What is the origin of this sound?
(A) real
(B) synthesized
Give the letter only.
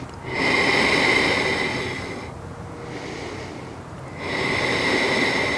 A